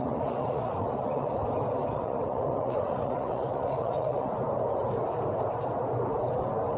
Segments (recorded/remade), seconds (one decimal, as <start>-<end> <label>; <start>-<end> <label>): 0.0-1.4 remade; 1.4-1.9 recorded; 1.9-4.3 remade; 4.3-6.8 recorded